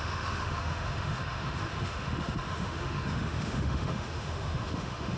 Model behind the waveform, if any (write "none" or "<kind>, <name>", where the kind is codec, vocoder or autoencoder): autoencoder, DAC-VAE